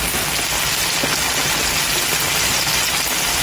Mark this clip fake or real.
real